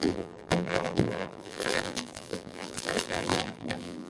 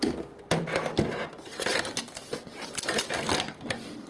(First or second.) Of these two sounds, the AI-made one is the first